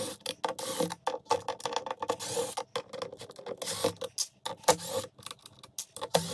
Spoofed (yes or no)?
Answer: no